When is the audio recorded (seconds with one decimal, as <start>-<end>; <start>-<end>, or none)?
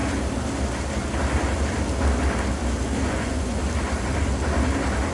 0.0-3.1; 3.6-5.1